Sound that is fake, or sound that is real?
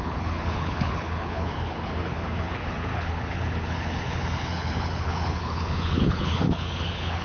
fake